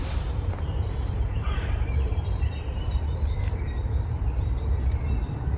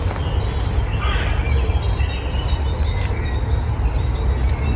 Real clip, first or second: second